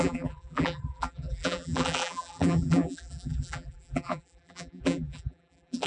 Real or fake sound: fake